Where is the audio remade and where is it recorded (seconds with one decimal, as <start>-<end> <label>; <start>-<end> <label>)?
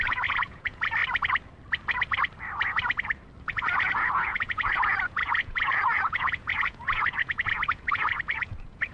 0.0-1.0 remade; 1.0-3.4 recorded; 3.4-8.9 remade